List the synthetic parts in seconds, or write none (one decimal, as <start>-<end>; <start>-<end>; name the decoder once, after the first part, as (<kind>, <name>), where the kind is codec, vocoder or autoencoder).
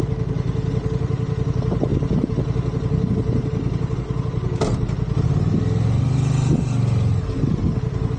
none